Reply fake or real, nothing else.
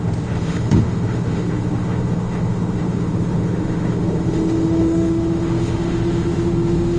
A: fake